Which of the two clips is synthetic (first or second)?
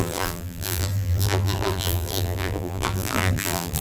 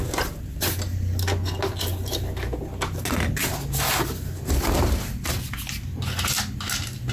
first